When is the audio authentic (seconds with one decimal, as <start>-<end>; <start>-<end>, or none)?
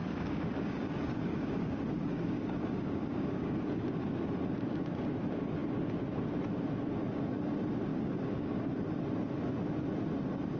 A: 4.1-7.9; 8.7-10.6